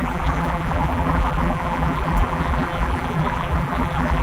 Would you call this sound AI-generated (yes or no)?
yes